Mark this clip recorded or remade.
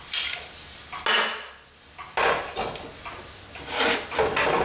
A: recorded